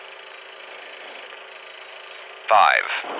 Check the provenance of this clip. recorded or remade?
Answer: recorded